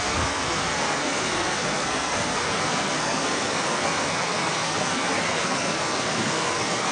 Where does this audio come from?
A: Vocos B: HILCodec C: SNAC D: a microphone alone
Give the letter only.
C